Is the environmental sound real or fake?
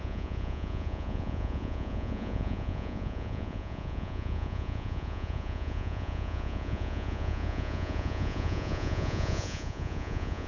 fake